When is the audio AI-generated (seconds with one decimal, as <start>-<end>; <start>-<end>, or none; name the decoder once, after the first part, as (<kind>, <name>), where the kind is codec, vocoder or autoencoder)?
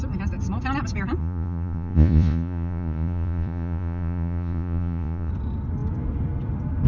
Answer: 1.2-5.3 (vocoder, Vocos)